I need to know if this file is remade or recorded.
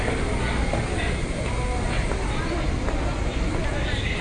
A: recorded